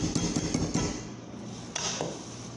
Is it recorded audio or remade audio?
recorded